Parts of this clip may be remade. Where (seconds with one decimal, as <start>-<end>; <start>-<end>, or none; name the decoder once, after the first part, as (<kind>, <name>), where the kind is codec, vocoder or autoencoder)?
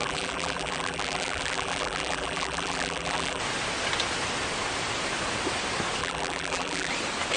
0.0-3.4 (vocoder, BigVGAN v2); 6.0-6.9